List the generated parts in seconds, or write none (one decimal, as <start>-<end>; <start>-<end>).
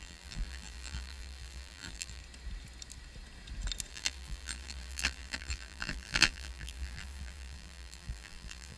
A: 0.0-2.2; 3.9-8.8